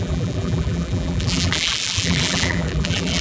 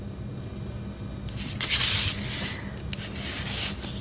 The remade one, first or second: first